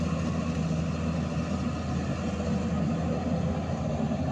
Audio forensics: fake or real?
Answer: real